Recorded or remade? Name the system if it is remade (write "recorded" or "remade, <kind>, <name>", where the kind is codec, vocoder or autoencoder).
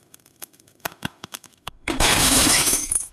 remade, autoencoder, DAC-VAE